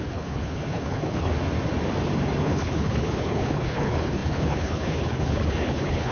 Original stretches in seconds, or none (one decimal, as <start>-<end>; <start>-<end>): 1.3-2.4